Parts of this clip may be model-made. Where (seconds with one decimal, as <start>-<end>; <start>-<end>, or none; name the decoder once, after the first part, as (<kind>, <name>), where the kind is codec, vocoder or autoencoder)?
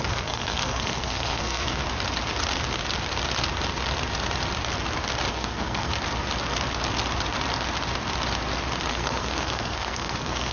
0.0-1.8 (codec, SNAC); 5.3-5.9; 8.9-10.5